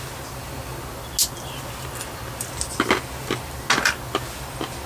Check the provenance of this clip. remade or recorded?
recorded